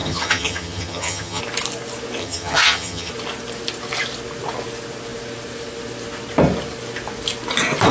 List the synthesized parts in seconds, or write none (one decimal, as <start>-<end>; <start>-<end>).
0.0-1.4; 2.2-3.1

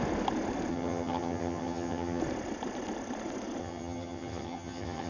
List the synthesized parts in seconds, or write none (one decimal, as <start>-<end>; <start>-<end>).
0.7-2.2; 3.6-5.1